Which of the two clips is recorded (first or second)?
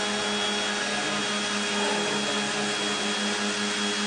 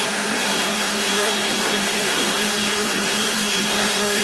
first